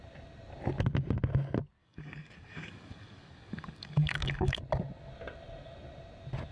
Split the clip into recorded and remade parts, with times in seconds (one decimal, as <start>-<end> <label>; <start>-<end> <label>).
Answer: 0.0-1.8 recorded; 1.8-4.6 remade; 4.6-6.5 recorded